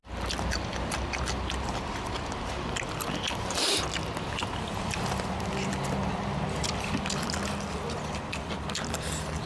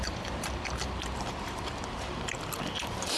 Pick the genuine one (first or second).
first